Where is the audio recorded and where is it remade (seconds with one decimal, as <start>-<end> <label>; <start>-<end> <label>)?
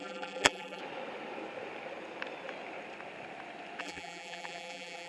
0.0-0.8 remade; 0.8-3.8 recorded; 3.8-5.1 remade